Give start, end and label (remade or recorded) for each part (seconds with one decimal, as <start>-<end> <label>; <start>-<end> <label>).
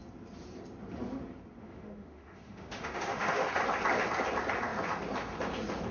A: 0.0-1.6 recorded; 1.6-3.5 remade; 3.5-5.9 recorded